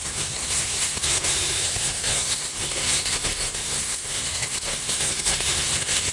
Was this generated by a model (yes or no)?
yes